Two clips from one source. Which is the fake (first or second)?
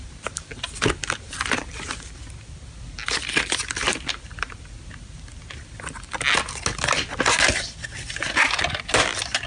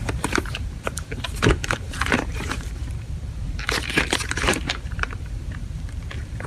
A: second